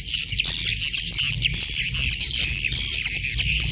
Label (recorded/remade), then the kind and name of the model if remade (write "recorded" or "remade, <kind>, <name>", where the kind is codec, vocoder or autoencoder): recorded